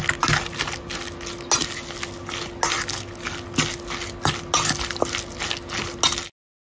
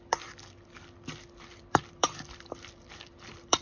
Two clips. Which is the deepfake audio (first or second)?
second